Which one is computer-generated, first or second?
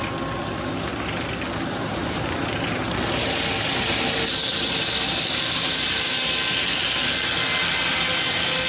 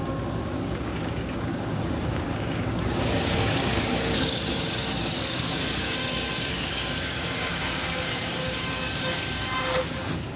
second